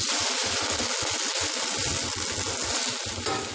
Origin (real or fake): real